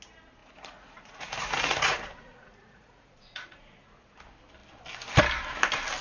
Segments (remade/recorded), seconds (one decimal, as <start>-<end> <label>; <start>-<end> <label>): 0.0-0.4 recorded; 0.4-4.0 remade; 4.0-6.0 recorded